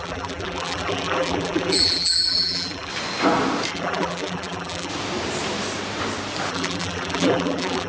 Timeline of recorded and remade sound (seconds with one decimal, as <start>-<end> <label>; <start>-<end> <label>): 0.0-2.9 remade; 2.9-3.7 recorded; 3.7-4.9 remade; 4.9-6.5 recorded; 6.5-7.9 remade